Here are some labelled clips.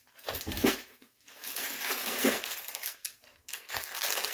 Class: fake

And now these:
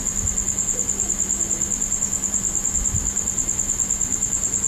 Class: real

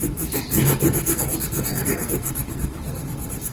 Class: fake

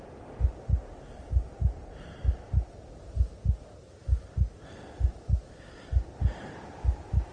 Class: real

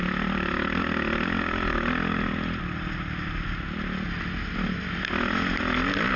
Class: real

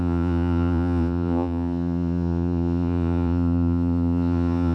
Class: fake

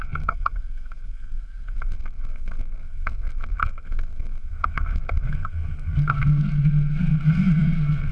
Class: fake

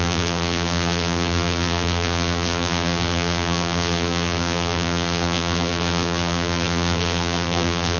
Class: fake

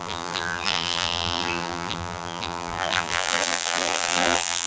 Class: fake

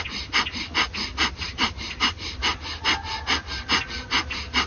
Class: real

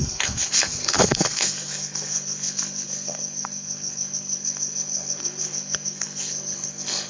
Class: fake